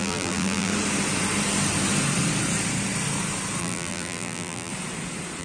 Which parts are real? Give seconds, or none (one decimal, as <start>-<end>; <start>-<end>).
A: 0.7-3.6; 4.7-5.4